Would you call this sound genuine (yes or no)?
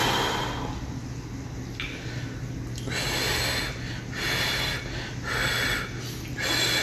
yes